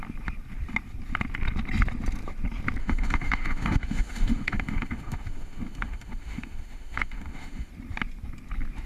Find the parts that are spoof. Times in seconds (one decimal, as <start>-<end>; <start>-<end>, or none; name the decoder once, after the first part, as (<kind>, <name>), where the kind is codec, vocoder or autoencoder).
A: 2.8-7.7 (autoencoder, DAC-VAE)